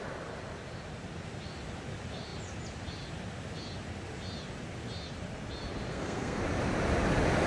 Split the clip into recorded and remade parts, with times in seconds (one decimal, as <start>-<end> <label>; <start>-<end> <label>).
0.0-5.9 recorded; 5.9-6.4 remade; 6.4-7.5 recorded